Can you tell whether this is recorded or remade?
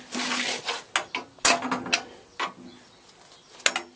recorded